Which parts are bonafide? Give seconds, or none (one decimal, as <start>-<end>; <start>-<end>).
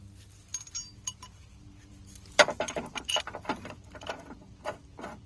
0.0-5.3